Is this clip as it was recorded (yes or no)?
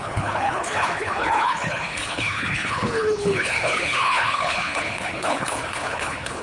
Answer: no